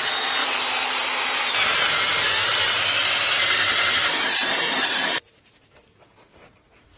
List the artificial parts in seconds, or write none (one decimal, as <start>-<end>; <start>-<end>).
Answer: 0.4-1.1